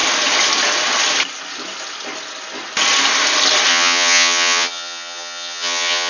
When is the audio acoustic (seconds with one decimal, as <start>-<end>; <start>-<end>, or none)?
0.0-3.7